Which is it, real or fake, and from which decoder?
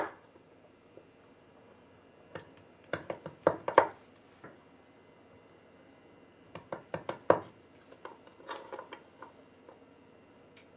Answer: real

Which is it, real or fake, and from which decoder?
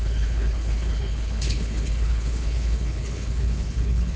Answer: fake, codec, HILCodec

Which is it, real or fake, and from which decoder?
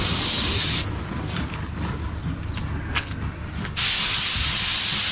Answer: real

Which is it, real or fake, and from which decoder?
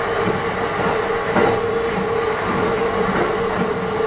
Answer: real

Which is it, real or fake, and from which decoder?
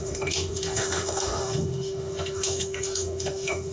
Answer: fake, autoencoder, DAC-VAE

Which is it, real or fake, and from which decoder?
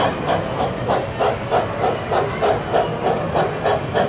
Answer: real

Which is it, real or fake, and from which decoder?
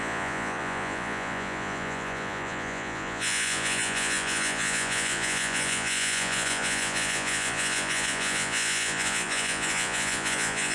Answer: fake, vocoder, Vocos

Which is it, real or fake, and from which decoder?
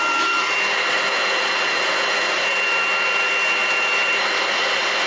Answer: fake, vocoder, BigVGAN v2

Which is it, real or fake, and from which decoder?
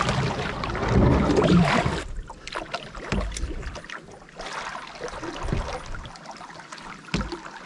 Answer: real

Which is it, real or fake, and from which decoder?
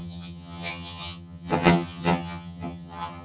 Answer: fake, vocoder, HiFi-GAN